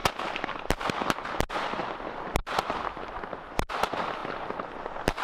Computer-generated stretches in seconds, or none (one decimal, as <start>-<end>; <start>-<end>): none